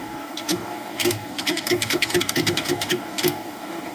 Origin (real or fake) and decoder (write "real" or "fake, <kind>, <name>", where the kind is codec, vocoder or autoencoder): fake, codec, DAC